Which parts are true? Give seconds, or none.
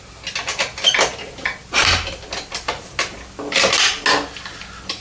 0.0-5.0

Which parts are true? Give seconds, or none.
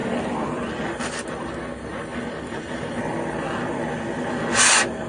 1.5-1.9; 3.0-5.1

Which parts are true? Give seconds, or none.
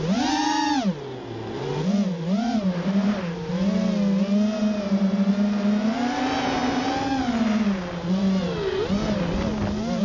0.0-2.6; 3.5-4.6; 5.3-10.0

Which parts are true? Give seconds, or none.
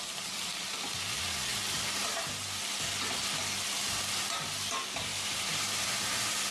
0.0-1.5; 2.3-5.1; 5.9-6.5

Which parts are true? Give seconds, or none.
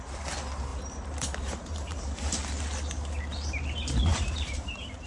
0.0-0.7; 2.5-4.1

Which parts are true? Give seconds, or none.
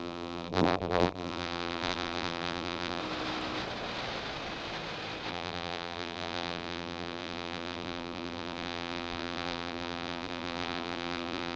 3.0-5.3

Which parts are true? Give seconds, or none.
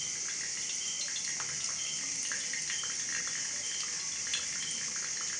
0.0-5.4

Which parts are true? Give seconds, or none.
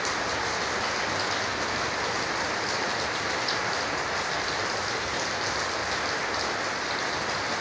0.0-5.8; 6.4-7.6